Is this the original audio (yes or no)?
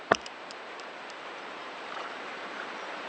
no